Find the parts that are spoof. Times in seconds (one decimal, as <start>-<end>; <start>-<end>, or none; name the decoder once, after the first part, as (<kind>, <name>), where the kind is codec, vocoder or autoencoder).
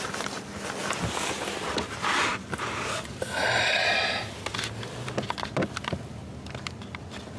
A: none